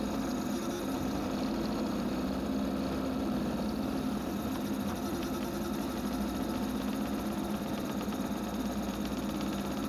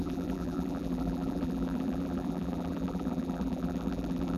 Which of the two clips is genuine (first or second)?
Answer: first